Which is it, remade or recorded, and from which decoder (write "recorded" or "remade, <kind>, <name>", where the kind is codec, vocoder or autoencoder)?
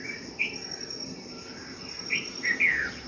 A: recorded